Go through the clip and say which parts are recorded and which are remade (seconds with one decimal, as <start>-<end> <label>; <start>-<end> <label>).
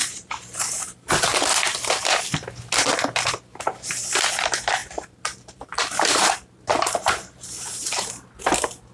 0.0-1.2 remade; 1.2-4.8 recorded; 4.8-8.4 remade; 8.4-8.9 recorded